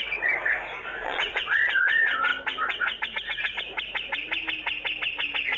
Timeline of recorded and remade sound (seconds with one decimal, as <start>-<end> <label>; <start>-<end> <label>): 0.0-1.0 recorded; 1.0-1.7 remade; 1.7-5.6 recorded